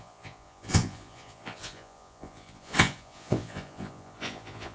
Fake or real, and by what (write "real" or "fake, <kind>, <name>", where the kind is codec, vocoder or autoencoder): fake, vocoder, Vocos